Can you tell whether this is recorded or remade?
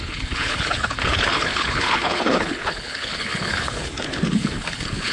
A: remade